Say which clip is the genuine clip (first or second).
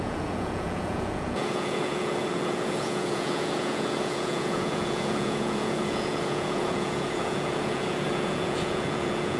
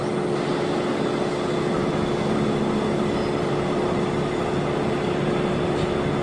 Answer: second